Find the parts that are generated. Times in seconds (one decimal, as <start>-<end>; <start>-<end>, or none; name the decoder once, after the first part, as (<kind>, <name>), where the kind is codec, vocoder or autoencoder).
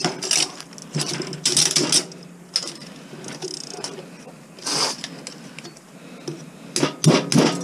none